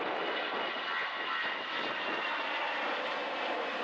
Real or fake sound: real